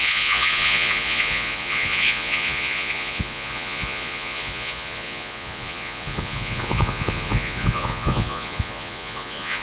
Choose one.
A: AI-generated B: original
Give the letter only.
A